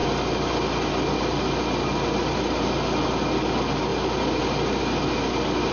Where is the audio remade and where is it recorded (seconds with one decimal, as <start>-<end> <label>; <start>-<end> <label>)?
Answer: 0.0-5.7 recorded